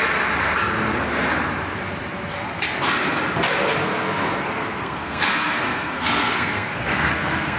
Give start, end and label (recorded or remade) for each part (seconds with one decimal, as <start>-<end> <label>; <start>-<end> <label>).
0.0-3.8 recorded; 3.8-7.6 remade